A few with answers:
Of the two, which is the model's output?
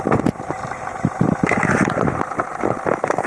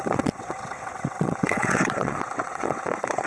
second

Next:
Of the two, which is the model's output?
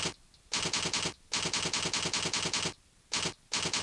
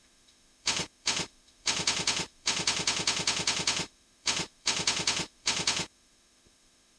second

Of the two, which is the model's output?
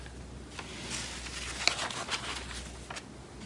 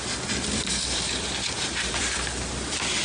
second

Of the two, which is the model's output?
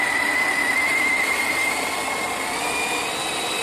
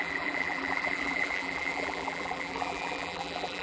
second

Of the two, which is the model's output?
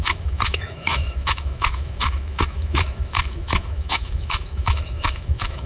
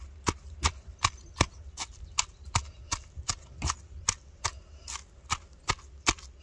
first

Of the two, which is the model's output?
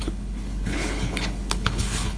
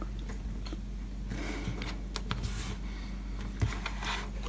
first